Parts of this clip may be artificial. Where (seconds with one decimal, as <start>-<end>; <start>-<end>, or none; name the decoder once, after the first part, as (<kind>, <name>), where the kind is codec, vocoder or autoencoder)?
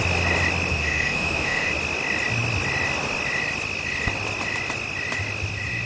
0.7-1.7 (autoencoder, DAC-VAE)